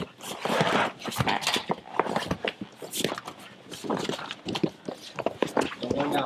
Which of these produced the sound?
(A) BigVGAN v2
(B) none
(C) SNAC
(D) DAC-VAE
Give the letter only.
B